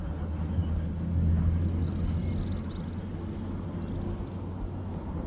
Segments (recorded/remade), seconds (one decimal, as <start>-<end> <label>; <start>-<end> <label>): 0.0-5.3 recorded